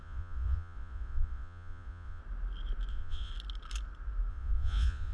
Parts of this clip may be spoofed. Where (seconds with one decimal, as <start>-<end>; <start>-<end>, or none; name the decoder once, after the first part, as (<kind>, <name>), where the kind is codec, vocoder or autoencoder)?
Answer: 0.0-2.2 (vocoder, Vocos); 2.9-3.3; 4.3-5.1